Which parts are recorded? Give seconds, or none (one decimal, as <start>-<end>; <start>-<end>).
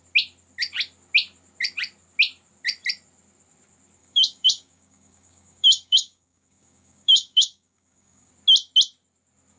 0.0-4.0; 8.3-9.6